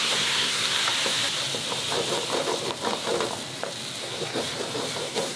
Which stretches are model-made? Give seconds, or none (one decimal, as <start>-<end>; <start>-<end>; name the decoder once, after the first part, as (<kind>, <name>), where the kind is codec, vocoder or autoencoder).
0.0-0.8 (codec, SNAC); 4.0-4.4; 5.0-5.4